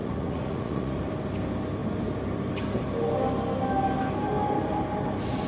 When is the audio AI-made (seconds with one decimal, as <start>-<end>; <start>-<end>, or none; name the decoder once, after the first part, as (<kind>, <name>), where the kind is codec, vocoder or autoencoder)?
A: 0.0-1.0 (vocoder, Vocos)